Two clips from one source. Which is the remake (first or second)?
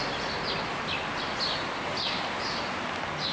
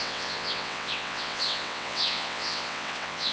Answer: second